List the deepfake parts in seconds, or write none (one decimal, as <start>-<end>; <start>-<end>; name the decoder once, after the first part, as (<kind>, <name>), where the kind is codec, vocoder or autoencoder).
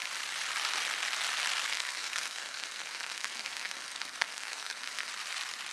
1.7-5.1 (codec, SNAC)